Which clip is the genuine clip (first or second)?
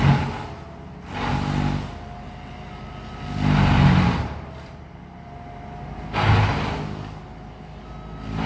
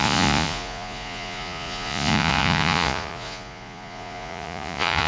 first